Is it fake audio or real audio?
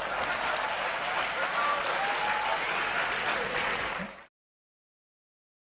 real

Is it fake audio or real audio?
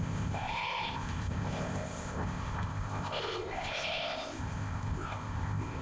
fake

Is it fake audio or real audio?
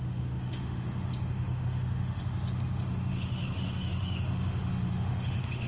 fake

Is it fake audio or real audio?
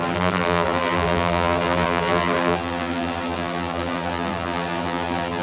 fake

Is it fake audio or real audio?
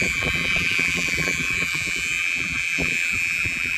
fake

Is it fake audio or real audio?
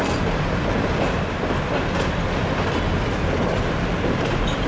real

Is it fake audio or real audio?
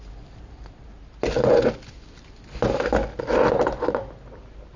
real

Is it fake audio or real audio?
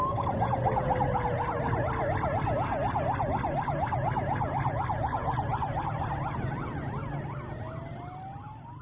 real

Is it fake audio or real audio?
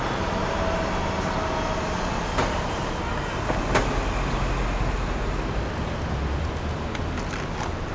real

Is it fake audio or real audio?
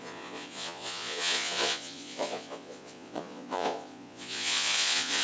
fake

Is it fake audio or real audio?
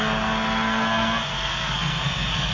fake